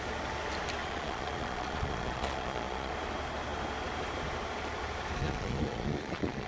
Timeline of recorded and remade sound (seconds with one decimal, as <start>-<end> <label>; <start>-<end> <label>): 0.0-0.8 recorded; 0.8-2.9 remade; 2.9-5.2 recorded; 5.2-6.5 remade